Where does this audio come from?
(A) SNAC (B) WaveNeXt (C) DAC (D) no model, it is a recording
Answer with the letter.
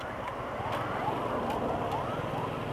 D